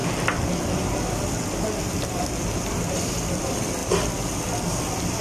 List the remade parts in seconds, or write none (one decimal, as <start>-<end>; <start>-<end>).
none